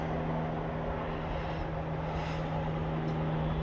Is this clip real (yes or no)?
yes